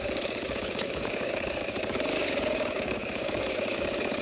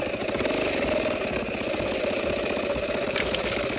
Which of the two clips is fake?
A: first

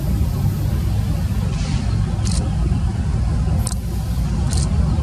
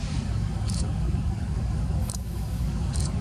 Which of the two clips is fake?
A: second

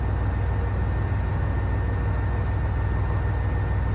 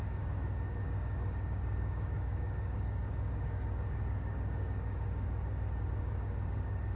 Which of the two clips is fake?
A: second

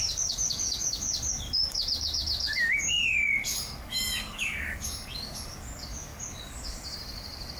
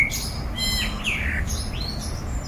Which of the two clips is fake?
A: first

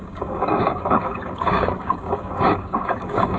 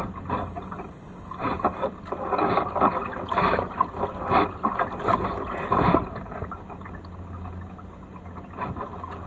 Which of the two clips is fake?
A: first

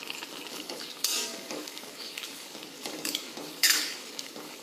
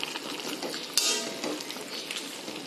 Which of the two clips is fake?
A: first